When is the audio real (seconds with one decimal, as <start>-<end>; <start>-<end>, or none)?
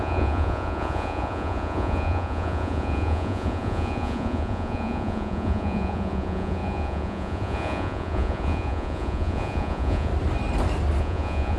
10.1-11.0